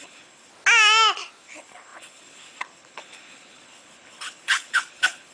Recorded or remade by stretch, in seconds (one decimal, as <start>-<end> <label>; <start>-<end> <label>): 0.0-0.5 remade; 0.5-1.4 recorded; 1.4-5.3 remade